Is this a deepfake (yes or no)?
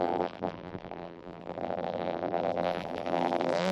yes